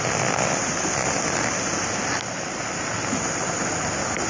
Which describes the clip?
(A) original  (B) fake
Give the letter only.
A